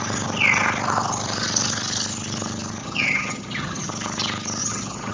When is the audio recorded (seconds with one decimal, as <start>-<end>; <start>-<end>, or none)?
0.0-2.8; 3.9-4.6